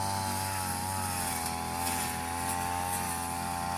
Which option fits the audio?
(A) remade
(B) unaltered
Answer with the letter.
B